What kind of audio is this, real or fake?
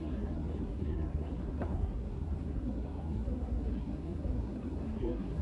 fake